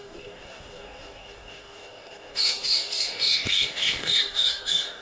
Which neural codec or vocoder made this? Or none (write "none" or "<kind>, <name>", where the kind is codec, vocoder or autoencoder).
codec, DAC